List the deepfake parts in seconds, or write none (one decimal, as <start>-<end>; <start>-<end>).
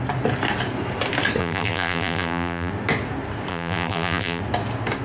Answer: 1.4-2.7; 3.5-4.4